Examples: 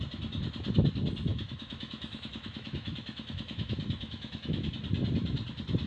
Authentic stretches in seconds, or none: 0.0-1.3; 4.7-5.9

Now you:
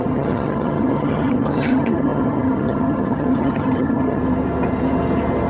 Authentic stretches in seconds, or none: 4.2-5.5

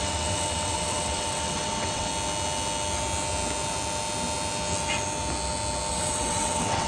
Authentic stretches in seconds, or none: 2.1-5.9

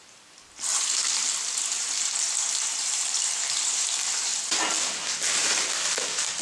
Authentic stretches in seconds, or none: 0.7-2.5; 4.3-5.4